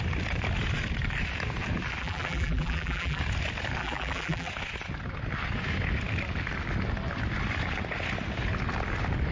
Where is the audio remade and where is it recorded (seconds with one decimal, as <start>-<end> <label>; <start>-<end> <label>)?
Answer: 0.0-2.0 recorded; 2.0-3.2 remade; 3.2-3.8 recorded; 3.8-4.5 remade; 4.5-9.3 recorded

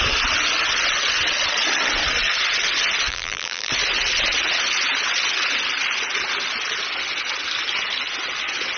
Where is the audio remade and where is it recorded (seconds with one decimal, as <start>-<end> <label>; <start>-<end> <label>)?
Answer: 0.0-3.1 recorded; 3.1-3.7 remade; 3.7-8.8 recorded

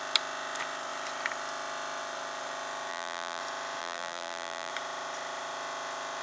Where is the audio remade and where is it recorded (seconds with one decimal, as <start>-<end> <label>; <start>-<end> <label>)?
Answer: 0.0-2.9 recorded; 2.9-3.4 remade; 3.4-3.8 recorded; 3.8-4.7 remade; 4.7-6.2 recorded